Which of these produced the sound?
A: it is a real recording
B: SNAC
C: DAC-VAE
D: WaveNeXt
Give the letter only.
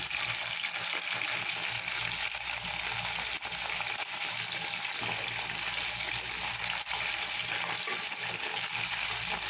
A